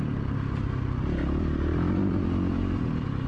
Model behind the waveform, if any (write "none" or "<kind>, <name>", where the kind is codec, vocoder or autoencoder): none